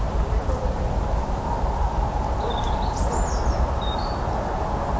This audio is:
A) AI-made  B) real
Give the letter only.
B